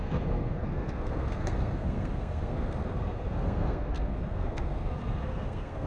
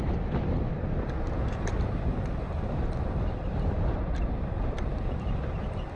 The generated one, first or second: first